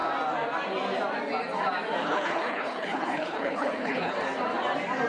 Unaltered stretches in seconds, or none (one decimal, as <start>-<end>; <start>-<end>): 0.0-2.0; 4.1-5.1